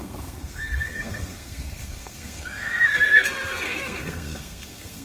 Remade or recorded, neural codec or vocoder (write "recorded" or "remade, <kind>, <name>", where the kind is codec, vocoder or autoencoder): remade, codec, SNAC